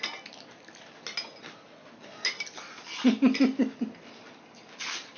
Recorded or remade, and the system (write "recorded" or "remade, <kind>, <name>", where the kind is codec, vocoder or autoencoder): recorded